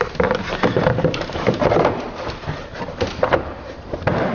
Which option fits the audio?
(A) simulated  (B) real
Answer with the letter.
A